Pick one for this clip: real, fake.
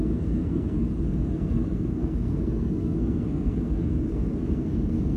fake